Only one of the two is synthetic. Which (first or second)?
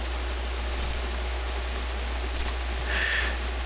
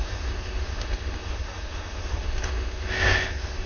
second